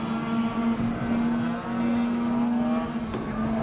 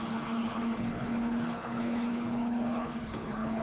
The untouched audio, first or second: first